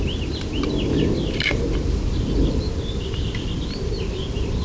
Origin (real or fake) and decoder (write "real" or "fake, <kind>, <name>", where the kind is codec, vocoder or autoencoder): fake, vocoder, BigVGAN v2